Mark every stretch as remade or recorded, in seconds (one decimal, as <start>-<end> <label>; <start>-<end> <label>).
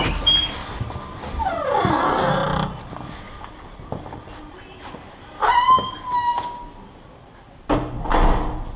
0.0-8.8 recorded